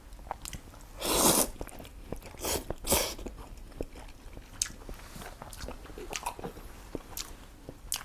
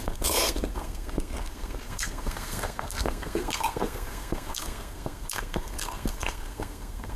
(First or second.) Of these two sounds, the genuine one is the first